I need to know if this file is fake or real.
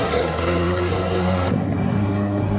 fake